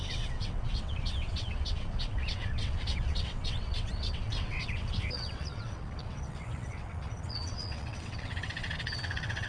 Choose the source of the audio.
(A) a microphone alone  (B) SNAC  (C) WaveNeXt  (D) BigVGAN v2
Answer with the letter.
C